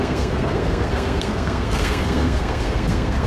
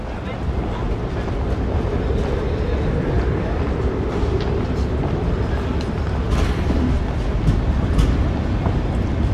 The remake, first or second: first